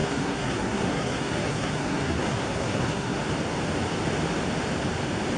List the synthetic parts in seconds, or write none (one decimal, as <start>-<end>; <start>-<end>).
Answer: 0.0-3.2